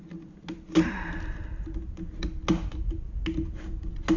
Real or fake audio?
real